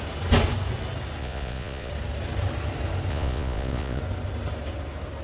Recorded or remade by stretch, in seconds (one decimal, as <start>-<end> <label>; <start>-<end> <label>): 0.0-1.2 recorded; 1.2-1.9 remade; 1.9-3.1 recorded; 3.1-4.0 remade; 4.0-5.2 recorded